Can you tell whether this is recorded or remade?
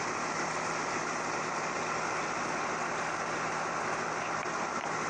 recorded